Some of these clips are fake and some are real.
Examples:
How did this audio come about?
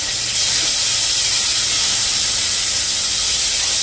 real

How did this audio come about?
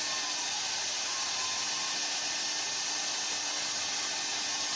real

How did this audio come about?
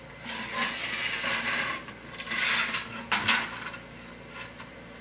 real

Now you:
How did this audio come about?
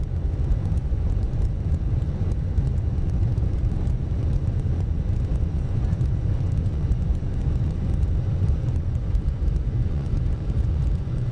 fake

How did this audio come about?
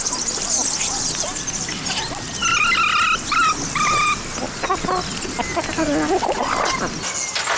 real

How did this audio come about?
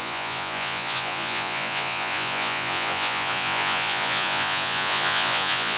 fake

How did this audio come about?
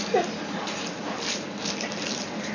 real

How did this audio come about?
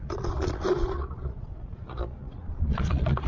fake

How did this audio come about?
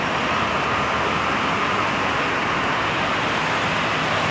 real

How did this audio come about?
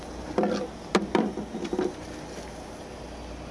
real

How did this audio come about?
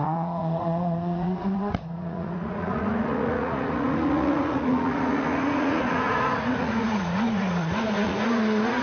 fake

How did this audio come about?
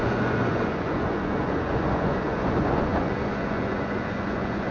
fake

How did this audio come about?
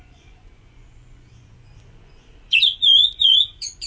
fake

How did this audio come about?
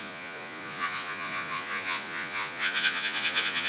fake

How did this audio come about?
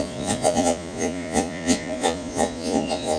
fake